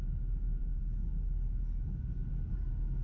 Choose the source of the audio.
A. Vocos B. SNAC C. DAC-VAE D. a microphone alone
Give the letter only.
D